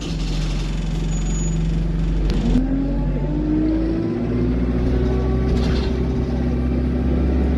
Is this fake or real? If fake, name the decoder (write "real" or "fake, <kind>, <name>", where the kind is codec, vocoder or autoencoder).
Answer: real